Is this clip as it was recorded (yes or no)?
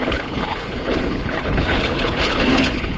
no